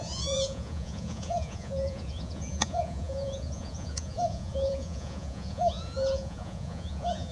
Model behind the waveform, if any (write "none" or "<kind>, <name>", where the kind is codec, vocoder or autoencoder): vocoder, Vocos